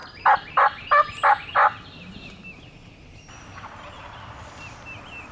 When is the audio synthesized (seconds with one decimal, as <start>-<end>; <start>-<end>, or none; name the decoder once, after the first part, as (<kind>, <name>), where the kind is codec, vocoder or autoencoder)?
none